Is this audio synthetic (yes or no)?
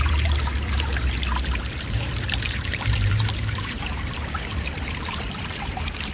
yes